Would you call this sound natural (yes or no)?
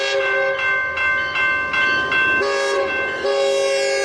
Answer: yes